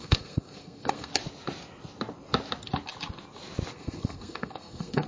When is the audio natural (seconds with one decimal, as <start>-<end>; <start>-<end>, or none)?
1.1-3.7